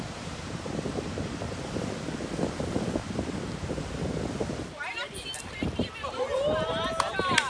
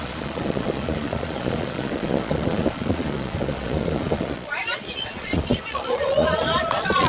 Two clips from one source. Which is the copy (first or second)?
second